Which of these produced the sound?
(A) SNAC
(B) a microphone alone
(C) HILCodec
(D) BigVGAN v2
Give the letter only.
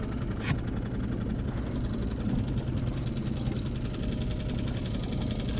B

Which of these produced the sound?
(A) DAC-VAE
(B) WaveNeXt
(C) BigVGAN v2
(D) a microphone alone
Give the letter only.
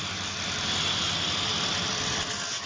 C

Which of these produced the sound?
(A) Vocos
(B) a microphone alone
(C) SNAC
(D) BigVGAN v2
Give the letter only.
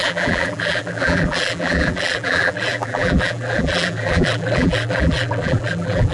D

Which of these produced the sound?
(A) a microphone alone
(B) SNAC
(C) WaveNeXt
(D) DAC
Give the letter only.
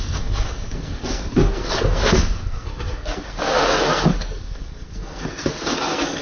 B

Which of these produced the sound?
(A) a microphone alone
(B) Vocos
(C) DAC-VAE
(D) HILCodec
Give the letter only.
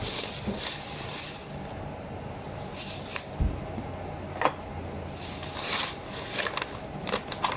A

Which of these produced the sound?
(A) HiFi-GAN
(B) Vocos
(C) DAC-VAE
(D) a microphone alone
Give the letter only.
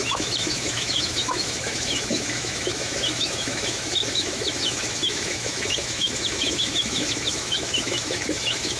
C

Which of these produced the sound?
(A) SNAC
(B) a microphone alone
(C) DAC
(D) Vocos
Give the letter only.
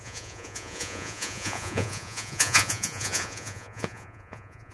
D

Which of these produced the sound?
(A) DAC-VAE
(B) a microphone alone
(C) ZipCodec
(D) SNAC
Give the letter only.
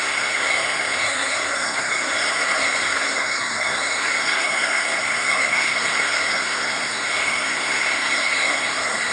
D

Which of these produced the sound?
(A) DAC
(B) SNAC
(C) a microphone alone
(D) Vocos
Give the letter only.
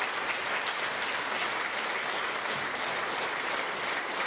C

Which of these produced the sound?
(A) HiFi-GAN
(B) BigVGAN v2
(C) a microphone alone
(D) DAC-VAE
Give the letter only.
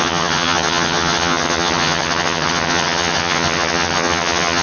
A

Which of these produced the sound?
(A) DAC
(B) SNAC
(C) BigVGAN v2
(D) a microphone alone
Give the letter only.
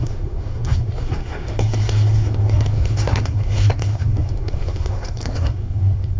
B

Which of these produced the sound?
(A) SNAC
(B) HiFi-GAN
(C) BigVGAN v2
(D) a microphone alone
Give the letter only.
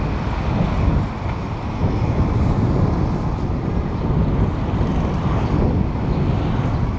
D